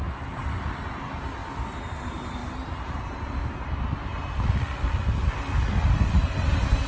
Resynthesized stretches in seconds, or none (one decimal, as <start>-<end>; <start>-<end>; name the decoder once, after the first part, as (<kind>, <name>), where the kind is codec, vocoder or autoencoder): none